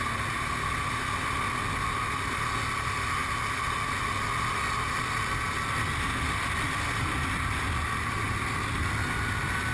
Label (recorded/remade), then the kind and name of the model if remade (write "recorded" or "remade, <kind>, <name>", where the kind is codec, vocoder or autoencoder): recorded